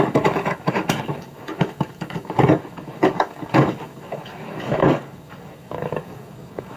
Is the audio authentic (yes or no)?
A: no